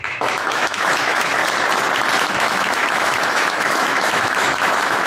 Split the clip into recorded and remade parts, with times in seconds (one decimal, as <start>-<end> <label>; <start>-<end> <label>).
0.0-1.4 remade; 1.4-2.3 recorded; 2.3-5.1 remade